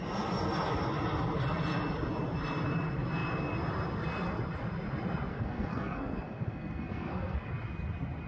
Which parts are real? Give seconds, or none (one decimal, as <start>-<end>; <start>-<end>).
0.0-5.3; 7.5-8.3